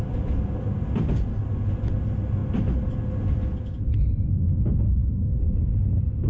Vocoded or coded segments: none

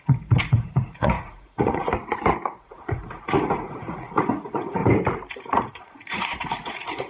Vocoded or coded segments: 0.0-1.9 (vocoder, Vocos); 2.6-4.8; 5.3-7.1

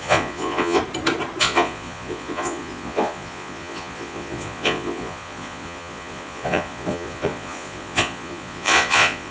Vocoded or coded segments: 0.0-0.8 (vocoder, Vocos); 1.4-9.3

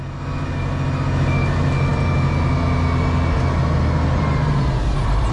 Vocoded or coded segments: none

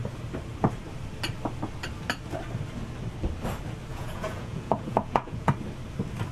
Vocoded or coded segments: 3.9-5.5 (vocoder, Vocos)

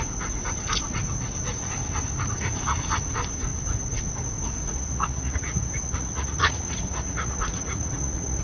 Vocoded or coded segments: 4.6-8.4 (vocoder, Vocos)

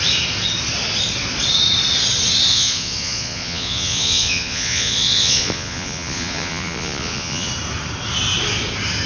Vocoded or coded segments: 2.5-7.5 (vocoder, Vocos)